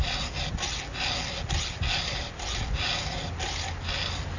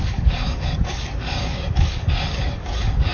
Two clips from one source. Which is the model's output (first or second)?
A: second